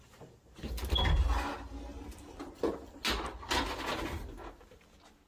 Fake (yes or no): no